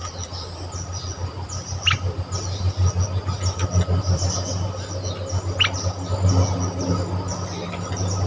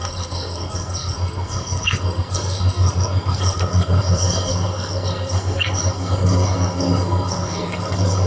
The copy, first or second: second